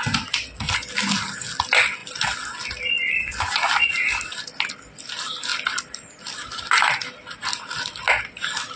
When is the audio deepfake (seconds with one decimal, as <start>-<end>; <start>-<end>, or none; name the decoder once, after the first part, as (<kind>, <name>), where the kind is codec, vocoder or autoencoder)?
none